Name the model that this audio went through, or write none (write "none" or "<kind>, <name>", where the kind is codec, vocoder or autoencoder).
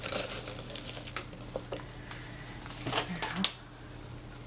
none